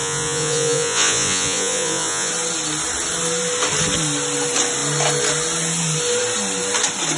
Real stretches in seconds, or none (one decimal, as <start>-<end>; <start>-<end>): 2.3-7.2